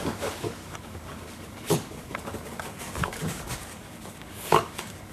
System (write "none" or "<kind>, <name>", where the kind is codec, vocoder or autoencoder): codec, DAC